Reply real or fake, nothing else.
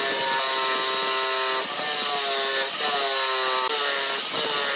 real